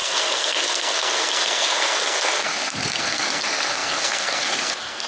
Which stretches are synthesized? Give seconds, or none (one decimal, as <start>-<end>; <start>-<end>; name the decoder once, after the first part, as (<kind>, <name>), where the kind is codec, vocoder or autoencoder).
0.0-5.1 (codec, SNAC)